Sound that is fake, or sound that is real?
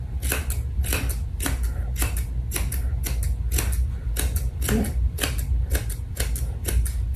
real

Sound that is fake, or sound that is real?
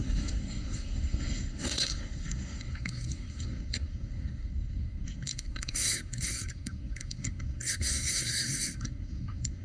fake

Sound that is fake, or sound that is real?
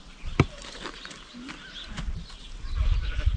real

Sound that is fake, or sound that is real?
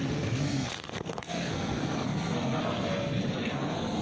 fake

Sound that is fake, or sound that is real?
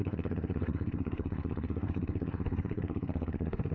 fake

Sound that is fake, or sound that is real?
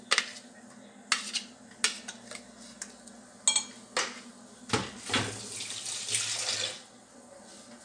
real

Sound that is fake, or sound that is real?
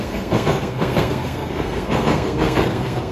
fake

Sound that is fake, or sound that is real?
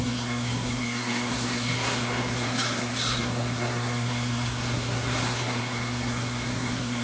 fake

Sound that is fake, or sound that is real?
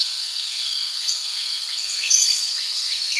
fake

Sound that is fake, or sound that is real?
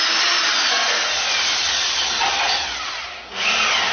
real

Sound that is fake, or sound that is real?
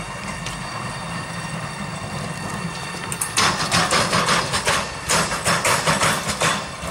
real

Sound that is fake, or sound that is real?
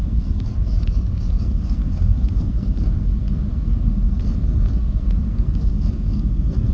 fake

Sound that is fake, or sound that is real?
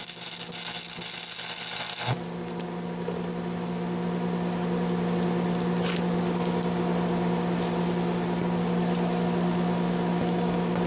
real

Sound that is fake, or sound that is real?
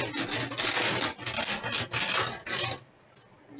real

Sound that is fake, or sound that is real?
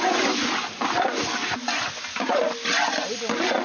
real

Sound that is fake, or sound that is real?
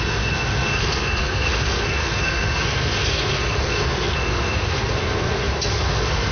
fake